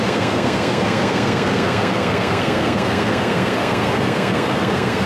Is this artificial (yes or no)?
yes